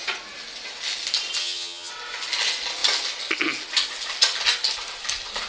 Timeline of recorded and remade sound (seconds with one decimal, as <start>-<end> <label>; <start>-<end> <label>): 0.0-1.4 recorded; 1.4-1.9 remade; 1.9-5.5 recorded